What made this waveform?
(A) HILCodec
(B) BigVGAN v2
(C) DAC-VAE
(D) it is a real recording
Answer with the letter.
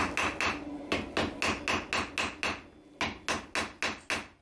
D